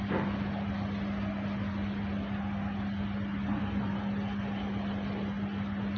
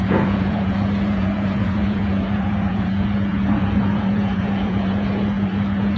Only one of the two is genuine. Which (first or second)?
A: first